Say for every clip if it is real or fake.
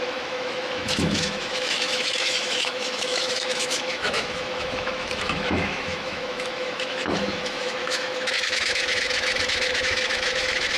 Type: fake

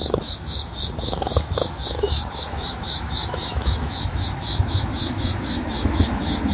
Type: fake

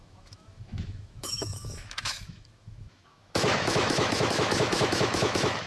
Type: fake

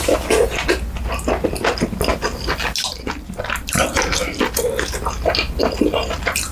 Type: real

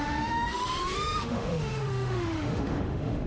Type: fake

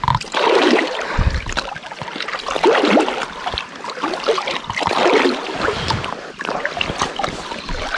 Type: real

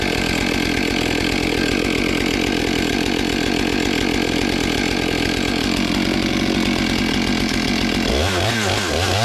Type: real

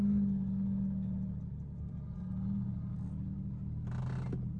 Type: real